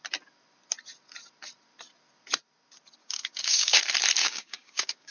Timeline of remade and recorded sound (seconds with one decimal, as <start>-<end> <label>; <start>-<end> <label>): 0.0-3.0 recorded; 3.0-3.8 remade; 3.8-4.2 recorded; 4.2-5.1 remade